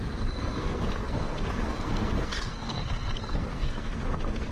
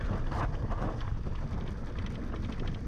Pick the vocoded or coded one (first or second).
first